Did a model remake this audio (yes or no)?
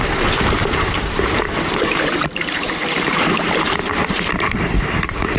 yes